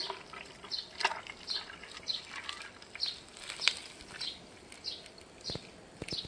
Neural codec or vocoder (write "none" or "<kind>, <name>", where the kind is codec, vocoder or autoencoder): none